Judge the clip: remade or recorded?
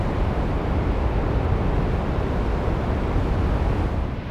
recorded